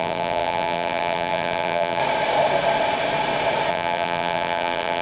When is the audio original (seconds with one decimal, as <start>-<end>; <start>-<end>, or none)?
2.0-3.7